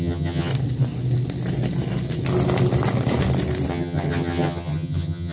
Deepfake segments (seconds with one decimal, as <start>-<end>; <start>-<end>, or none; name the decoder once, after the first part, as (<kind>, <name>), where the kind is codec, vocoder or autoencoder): 0.0-0.5 (vocoder, HiFi-GAN); 3.7-5.3